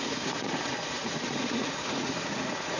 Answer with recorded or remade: remade